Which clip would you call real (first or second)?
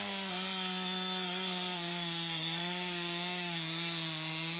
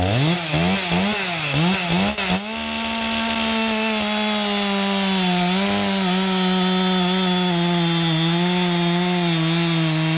second